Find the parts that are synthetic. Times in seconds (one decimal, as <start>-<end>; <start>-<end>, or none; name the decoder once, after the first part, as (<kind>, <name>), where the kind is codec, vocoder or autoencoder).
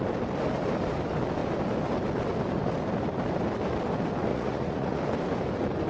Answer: 4.3-5.0 (vocoder, Vocos)